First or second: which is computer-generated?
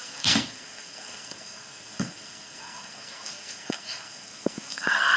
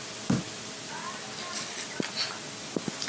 first